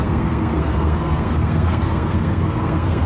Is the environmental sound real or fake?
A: fake